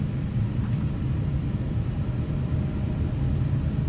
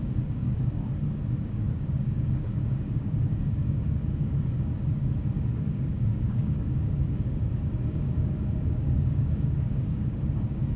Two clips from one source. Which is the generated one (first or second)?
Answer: second